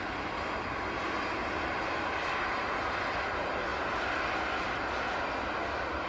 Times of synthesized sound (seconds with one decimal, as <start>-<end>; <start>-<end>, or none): none